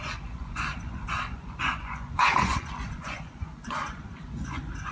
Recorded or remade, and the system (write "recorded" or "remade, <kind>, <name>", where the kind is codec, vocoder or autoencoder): remade, vocoder, Vocos